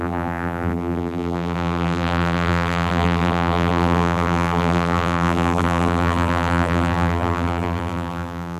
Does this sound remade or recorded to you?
remade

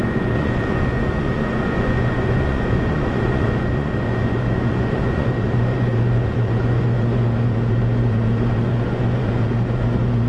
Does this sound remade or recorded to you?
remade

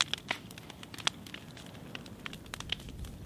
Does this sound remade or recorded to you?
recorded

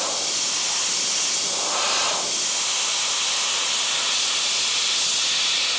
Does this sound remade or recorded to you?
recorded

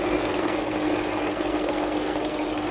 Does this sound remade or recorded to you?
remade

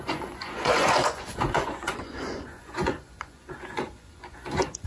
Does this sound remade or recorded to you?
remade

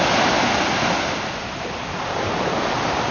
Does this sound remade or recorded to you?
recorded